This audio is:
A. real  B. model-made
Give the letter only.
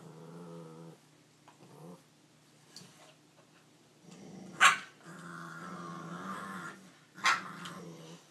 A